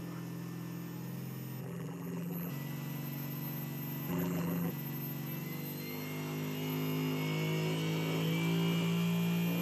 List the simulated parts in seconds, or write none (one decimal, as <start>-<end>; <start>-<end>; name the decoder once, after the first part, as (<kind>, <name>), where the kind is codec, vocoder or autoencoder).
1.6-2.5 (vocoder, BigVGAN v2); 4.1-4.7